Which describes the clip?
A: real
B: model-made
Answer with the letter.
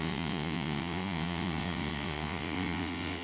B